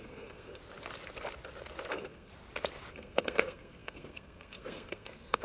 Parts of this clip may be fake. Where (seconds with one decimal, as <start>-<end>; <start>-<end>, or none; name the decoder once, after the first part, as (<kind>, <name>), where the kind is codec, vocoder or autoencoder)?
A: 0.0-0.6 (codec, SNAC); 1.9-2.3; 2.9-5.4